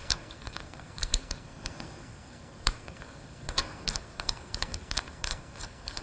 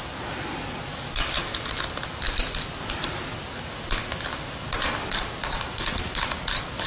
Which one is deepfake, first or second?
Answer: first